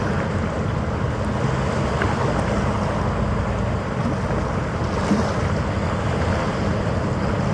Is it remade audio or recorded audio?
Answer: recorded